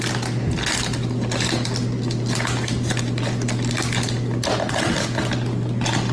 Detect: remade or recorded recorded